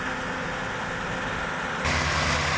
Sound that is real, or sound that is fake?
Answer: real